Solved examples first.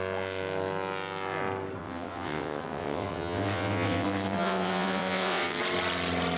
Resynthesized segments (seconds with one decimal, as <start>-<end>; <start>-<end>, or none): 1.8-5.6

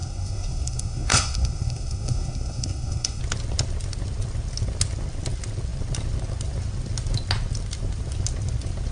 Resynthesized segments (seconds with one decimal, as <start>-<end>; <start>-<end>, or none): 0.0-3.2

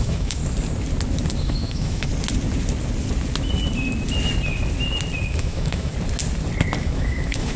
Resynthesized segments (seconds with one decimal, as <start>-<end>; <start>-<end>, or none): 0.0-0.4; 1.4-2.1; 5.3-5.9; 6.8-7.6

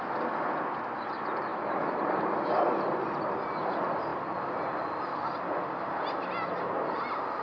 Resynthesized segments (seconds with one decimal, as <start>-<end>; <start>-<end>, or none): 1.5-2.0

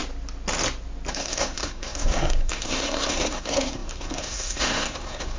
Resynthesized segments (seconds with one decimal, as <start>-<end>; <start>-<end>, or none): 1.1-5.4